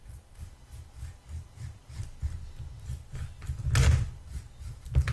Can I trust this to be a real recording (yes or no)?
yes